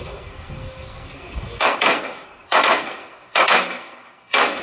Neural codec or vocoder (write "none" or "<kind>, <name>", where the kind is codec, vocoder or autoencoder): codec, SNAC